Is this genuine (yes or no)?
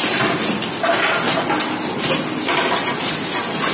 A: yes